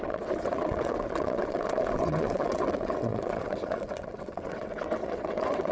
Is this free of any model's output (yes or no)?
no